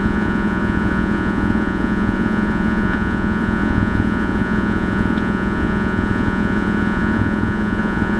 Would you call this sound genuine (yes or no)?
no